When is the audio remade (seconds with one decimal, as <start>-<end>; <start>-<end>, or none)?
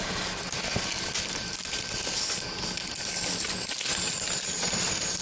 3.9-4.8